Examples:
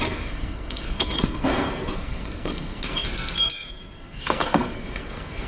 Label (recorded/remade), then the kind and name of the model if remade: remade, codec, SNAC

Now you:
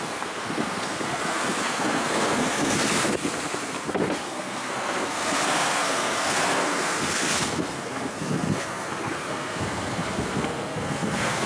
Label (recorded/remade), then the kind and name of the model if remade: remade, codec, SNAC